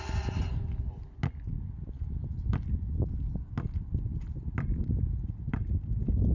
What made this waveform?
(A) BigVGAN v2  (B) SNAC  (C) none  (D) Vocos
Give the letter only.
C